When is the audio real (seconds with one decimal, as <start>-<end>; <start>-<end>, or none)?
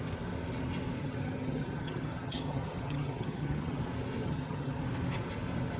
0.0-1.0; 3.8-4.2; 4.8-5.8